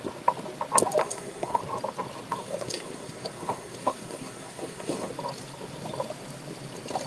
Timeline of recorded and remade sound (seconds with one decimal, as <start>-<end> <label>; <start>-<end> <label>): 0.0-1.0 recorded; 1.0-1.6 remade; 1.6-2.3 recorded; 2.3-5.1 remade; 5.1-7.1 recorded